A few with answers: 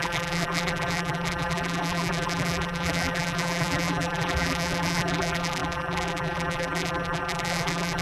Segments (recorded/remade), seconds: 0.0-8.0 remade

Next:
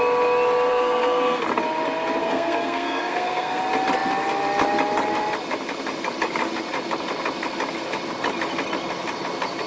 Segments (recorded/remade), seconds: 0.0-0.7 recorded; 0.7-1.4 remade; 1.4-2.2 recorded; 2.2-3.6 remade; 3.6-9.7 recorded

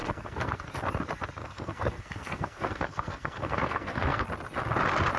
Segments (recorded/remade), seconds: 0.0-0.7 remade; 0.7-1.4 recorded; 1.4-4.3 remade; 4.3-5.2 recorded

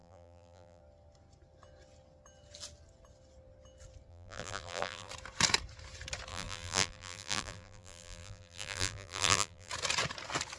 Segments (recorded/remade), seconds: 0.0-0.8 remade; 0.8-4.1 recorded; 4.1-5.1 remade; 5.1-6.3 recorded; 6.3-9.7 remade; 9.7-10.6 recorded

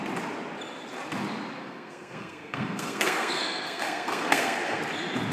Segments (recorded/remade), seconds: 0.0-1.6 recorded; 1.6-4.8 remade; 4.8-5.3 recorded

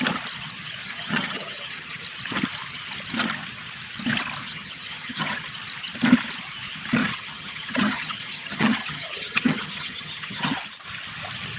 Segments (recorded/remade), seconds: 0.0-0.8 recorded; 0.8-2.0 remade; 2.0-4.4 recorded; 4.4-5.4 remade; 5.4-7.0 recorded; 7.0-10.5 remade; 10.5-11.6 recorded